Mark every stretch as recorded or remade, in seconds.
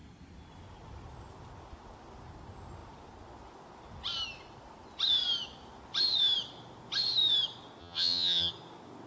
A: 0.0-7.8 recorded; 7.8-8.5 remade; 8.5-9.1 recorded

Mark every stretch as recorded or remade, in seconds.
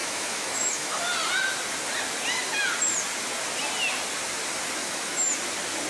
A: 0.0-1.0 remade; 1.0-4.8 recorded; 4.8-5.3 remade; 5.3-5.9 recorded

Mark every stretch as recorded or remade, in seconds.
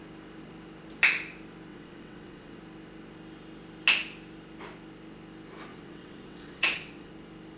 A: 0.0-1.7 recorded; 1.7-2.6 remade; 2.6-5.7 recorded; 5.7-7.1 remade; 7.1-7.6 recorded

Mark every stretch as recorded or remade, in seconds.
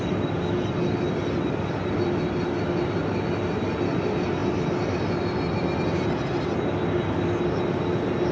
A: 0.0-8.3 recorded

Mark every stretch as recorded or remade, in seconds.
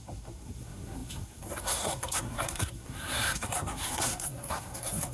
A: 0.0-5.1 remade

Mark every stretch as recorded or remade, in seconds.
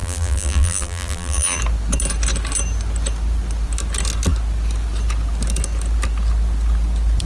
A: 0.0-1.6 remade; 1.6-7.3 recorded